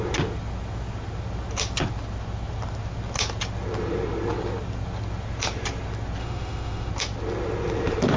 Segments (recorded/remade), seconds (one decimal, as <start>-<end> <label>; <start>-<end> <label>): 0.0-6.2 recorded; 6.2-6.9 remade; 6.9-8.2 recorded